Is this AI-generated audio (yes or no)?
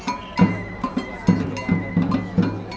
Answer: no